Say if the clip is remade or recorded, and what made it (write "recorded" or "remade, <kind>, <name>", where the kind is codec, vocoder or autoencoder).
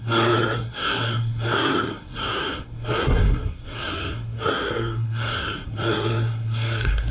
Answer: remade, codec, SNAC